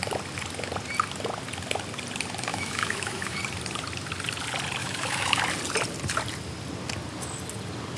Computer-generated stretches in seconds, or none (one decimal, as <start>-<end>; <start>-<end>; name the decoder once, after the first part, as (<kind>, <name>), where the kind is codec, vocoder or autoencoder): 2.5-3.4 (autoencoder, DAC-VAE); 4.8-5.4